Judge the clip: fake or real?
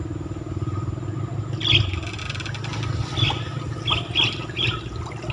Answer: real